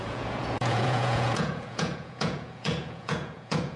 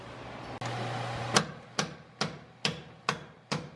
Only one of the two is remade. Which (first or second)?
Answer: first